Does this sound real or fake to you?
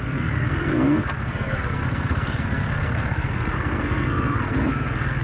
fake